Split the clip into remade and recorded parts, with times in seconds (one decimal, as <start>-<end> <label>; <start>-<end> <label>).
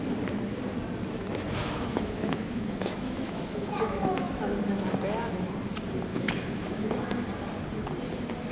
0.0-1.6 recorded; 1.6-4.6 remade; 4.6-6.1 recorded; 6.1-6.9 remade; 6.9-8.5 recorded